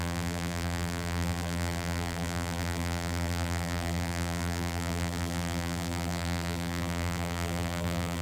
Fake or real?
fake